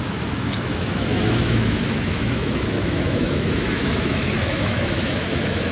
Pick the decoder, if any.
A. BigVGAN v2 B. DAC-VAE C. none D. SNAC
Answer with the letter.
B